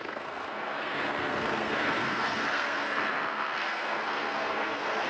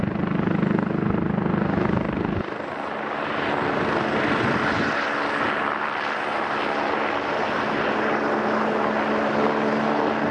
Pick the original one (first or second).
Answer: second